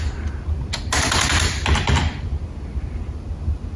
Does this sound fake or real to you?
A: real